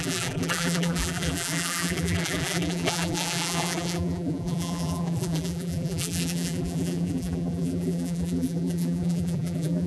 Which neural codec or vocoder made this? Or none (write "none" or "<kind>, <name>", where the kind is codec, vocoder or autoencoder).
vocoder, BigVGAN v2